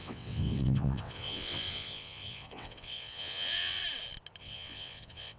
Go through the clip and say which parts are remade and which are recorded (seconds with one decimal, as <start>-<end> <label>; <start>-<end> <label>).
0.0-3.8 remade; 3.8-4.4 recorded; 4.4-5.4 remade